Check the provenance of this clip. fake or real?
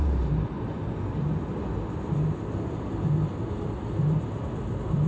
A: real